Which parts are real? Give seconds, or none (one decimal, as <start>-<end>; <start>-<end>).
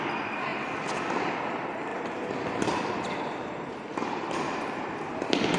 0.0-5.6